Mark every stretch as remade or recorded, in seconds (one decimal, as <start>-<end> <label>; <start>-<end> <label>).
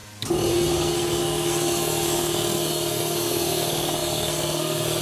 0.0-0.5 recorded; 0.5-5.0 remade